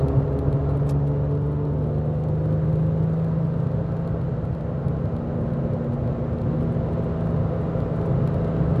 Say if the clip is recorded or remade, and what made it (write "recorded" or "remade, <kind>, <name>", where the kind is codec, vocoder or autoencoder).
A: recorded